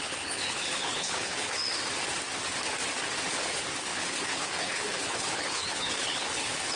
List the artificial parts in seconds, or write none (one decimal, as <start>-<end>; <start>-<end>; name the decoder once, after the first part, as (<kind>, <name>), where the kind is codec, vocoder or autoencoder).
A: 0.0-1.6 (codec, HILCodec); 3.3-6.8